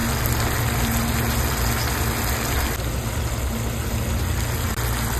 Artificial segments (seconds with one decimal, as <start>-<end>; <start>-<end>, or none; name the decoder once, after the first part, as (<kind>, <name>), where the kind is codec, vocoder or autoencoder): none